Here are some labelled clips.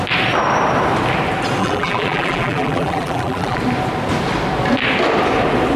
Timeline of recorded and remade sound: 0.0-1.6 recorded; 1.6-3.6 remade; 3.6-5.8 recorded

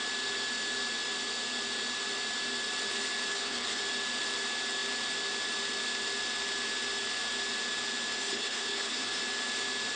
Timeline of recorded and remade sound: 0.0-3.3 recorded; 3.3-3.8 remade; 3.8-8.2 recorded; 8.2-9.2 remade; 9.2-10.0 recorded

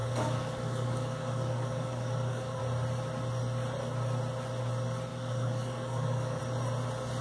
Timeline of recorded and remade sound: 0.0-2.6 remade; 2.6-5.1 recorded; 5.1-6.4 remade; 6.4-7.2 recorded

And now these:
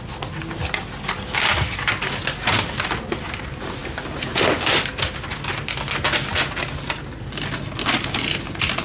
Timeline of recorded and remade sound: 0.0-8.8 recorded

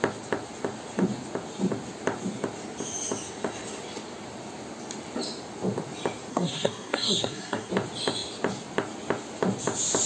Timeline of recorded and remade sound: 0.0-6.3 recorded; 6.3-7.7 remade; 7.7-10.1 recorded